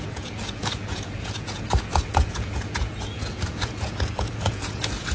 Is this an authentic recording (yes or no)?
no